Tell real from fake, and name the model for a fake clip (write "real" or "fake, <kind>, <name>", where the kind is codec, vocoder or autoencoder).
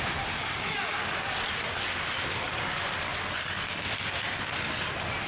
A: real